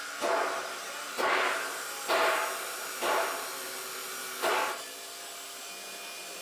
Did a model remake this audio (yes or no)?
no